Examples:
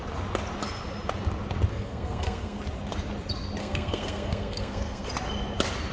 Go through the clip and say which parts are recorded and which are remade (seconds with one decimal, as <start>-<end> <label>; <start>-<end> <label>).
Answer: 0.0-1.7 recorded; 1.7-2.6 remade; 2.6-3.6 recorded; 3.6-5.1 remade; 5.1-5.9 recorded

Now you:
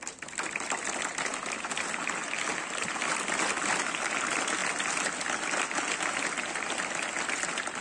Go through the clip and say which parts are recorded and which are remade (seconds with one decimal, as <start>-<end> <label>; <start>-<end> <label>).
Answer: 0.0-7.8 recorded

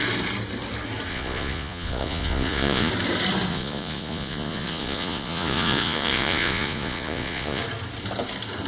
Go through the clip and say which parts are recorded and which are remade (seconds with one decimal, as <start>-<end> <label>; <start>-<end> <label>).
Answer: 0.0-1.1 recorded; 1.1-2.9 remade; 2.9-3.5 recorded; 3.5-7.6 remade; 7.6-8.7 recorded

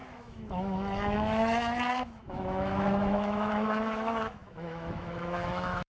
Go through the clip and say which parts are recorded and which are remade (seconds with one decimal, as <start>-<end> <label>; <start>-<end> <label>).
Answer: 0.0-5.9 remade

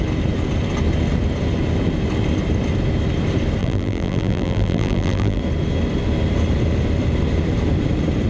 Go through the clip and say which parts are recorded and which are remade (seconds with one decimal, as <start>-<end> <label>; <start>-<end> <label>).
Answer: 0.0-3.6 recorded; 3.6-5.4 remade; 5.4-8.3 recorded

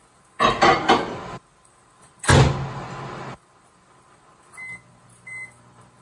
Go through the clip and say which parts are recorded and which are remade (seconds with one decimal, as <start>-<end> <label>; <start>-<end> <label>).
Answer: 0.0-6.0 recorded